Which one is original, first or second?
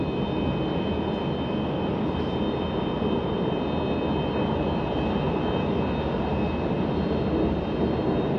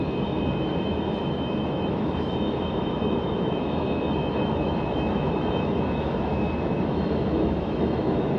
first